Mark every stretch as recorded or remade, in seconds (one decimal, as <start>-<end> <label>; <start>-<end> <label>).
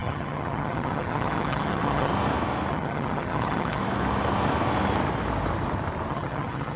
0.0-2.1 remade; 2.1-2.7 recorded; 2.7-3.8 remade; 3.8-6.1 recorded; 6.1-6.8 remade